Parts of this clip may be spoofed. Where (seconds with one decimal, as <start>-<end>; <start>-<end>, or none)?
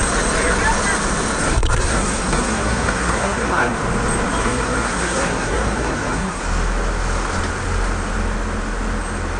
1.4-3.8; 4.4-6.4